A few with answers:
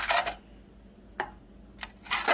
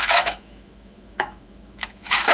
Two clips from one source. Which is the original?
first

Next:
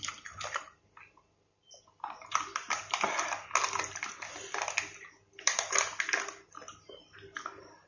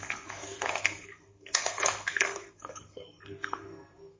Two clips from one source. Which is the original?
first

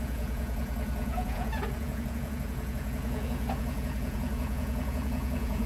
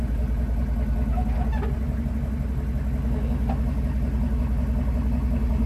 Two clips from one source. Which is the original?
second